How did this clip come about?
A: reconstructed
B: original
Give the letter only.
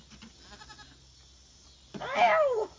B